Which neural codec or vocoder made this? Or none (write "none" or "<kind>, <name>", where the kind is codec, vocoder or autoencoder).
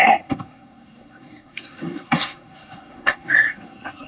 codec, SNAC